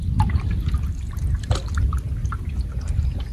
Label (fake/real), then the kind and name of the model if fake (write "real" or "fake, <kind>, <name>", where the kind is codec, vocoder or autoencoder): real